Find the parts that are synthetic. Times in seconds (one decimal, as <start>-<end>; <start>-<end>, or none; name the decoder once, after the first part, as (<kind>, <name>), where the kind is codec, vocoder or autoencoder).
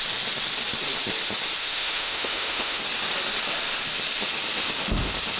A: 1.6-2.8 (autoencoder, DAC-VAE)